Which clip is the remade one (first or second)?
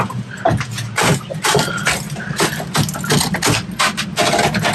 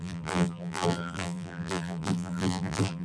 second